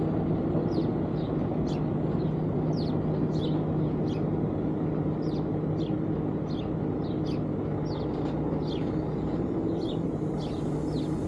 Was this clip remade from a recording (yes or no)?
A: no